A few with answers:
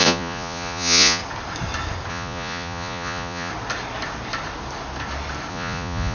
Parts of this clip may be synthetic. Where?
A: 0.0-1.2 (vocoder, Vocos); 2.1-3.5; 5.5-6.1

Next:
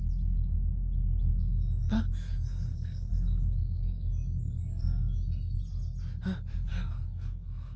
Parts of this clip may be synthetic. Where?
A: 1.3-5.6 (codec, SNAC); 6.7-7.8

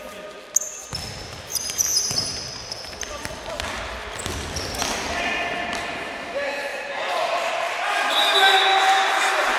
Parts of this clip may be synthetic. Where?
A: 1.5-2.1 (vocoder, BigVGAN v2); 6.7-7.5; 8.7-9.6

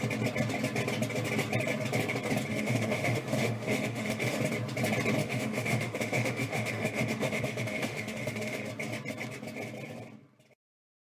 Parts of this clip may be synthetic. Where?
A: 2.5-4.4 (autoencoder, DAC-VAE); 5.2-8.7

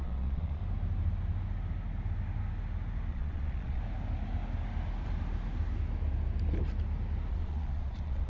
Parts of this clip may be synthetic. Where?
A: 0.0-0.6 (vocoder, Vocos); 3.1-3.8; 7.3-8.3